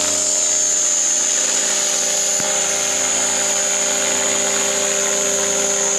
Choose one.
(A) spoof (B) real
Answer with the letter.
B